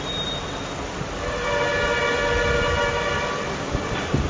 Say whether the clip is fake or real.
real